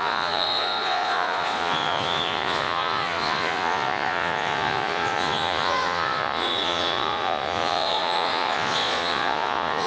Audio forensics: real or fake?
fake